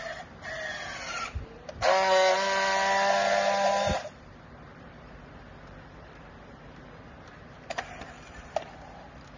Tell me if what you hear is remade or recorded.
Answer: recorded